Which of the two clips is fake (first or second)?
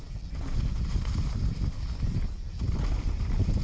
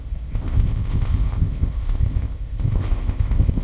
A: second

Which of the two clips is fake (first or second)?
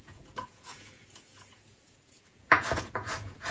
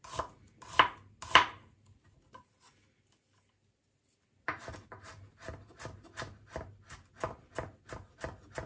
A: first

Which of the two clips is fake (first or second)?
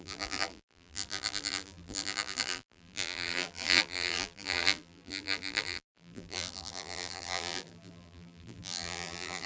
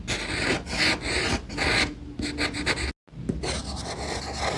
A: first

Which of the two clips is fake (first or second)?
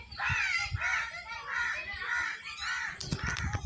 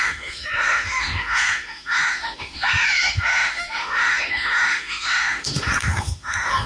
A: second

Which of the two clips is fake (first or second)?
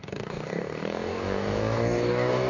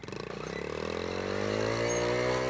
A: first